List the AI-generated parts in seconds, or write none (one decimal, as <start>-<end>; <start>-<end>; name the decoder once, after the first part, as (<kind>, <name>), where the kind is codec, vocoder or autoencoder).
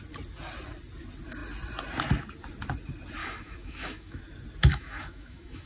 3.2-4.2 (autoencoder, DAC-VAE); 4.7-5.7